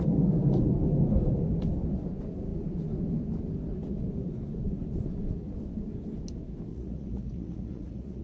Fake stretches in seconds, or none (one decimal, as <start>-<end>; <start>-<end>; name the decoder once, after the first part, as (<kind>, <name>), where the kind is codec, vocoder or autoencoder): 6.7-8.2 (vocoder, Vocos)